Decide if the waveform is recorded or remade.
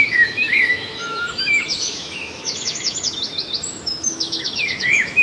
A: remade